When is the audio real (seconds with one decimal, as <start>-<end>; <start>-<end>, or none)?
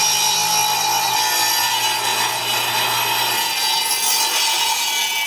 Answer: 0.0-5.3